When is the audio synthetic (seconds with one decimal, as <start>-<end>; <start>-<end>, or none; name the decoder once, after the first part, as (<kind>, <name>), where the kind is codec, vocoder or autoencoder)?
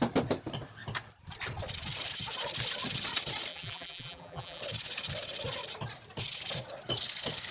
3.5-4.6 (vocoder, BigVGAN v2)